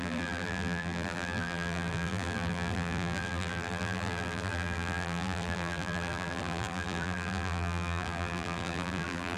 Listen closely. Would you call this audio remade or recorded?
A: remade